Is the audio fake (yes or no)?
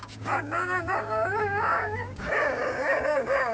yes